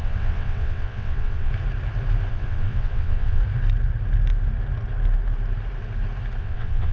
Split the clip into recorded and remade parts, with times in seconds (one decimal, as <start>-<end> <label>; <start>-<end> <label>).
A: 0.0-1.5 remade; 1.5-2.3 recorded; 2.3-3.4 remade; 3.4-6.4 recorded; 6.4-6.9 remade